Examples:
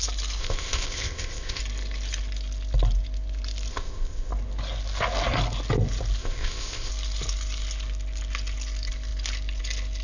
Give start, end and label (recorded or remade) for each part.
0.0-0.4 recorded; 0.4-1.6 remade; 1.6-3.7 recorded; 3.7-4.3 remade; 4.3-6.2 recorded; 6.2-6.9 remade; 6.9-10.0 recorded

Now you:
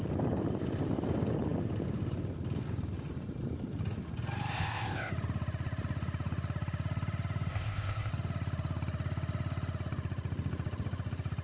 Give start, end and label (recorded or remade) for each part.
0.0-4.5 recorded; 4.5-5.1 remade; 5.1-7.5 recorded; 7.5-8.1 remade; 8.1-11.4 recorded

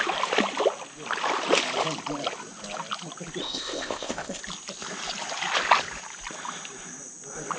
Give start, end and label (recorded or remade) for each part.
0.0-3.4 recorded; 3.4-4.4 remade; 4.4-7.6 recorded

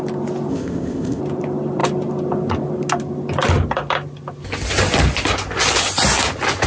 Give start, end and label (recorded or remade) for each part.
0.0-0.5 recorded; 0.5-1.2 remade; 1.2-6.7 recorded

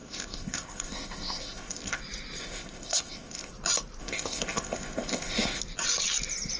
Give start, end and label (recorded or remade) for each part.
0.0-2.0 remade; 2.0-2.4 recorded; 2.4-3.5 remade; 3.5-4.0 recorded; 4.0-5.6 remade; 5.6-6.6 recorded

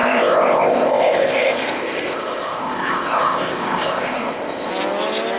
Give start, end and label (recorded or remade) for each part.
0.0-4.7 remade; 4.7-5.4 recorded